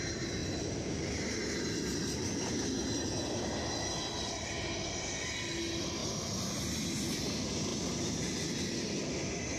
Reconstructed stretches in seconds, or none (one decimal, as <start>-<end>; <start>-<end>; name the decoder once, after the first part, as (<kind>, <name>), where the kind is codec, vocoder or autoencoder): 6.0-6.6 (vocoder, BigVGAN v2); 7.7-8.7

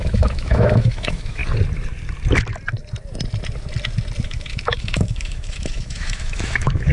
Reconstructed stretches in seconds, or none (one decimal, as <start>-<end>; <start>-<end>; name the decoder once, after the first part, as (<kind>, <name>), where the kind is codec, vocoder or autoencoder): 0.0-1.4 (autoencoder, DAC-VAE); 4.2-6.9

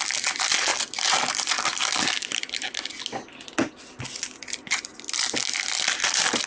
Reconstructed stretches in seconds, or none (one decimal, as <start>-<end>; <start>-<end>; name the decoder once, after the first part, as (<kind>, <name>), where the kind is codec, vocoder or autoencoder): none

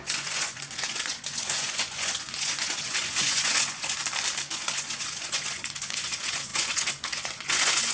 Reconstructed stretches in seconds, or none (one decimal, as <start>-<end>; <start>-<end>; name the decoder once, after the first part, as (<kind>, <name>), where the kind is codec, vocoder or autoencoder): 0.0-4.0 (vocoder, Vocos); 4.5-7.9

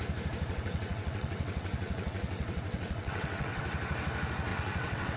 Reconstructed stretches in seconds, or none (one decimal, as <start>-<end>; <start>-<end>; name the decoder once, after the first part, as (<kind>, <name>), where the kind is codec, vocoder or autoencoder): 0.5-3.6 (vocoder, WaveNeXt); 4.5-5.2

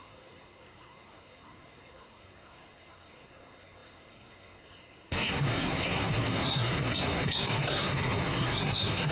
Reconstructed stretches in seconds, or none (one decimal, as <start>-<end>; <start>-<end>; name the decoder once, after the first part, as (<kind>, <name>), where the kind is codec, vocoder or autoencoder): 0.0-9.1 (codec, SNAC)

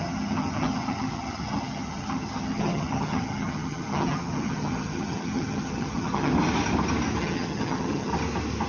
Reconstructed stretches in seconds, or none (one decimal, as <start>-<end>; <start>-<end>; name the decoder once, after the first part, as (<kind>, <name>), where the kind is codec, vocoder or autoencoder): 0.0-6.3 (vocoder, HiFi-GAN); 7.2-8.1

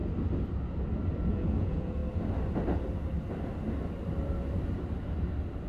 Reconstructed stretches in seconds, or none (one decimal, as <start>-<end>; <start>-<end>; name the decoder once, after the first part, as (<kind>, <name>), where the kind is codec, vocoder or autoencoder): 1.3-2.0 (vocoder, Vocos)